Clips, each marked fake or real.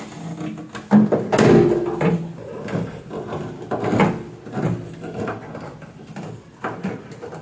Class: real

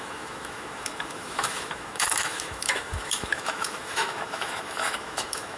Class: fake